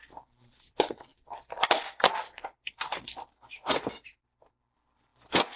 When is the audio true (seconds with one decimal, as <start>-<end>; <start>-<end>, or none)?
0.0-5.6

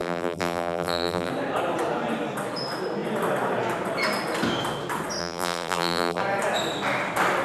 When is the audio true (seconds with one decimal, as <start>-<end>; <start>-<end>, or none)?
1.3-5.2; 6.2-7.4